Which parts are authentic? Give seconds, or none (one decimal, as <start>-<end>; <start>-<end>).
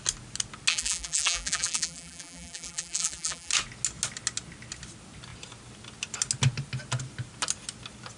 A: 0.0-0.7; 3.5-8.2